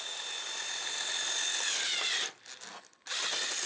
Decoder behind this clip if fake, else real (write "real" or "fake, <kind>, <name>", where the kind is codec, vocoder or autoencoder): real